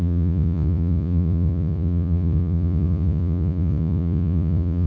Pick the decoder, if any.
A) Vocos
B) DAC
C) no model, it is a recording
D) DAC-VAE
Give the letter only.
A